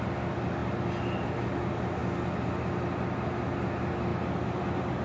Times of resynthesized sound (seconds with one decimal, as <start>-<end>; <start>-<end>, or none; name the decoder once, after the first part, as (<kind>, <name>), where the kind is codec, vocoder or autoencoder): 4.1-5.0 (vocoder, BigVGAN v2)